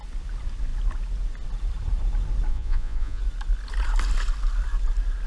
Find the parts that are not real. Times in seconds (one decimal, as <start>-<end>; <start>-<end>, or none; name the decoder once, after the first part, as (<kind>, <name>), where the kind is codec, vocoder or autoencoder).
2.5-3.2 (vocoder, Vocos)